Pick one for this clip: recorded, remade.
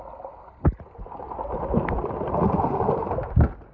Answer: recorded